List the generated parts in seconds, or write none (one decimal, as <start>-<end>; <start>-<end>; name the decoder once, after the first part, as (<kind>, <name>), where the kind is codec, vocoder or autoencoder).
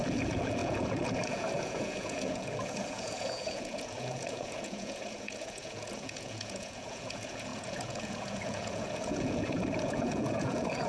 0.0-10.9 (vocoder, Vocos)